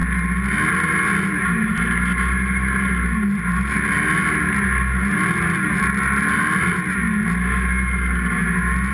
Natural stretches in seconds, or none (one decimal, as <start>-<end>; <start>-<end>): 0.0-8.9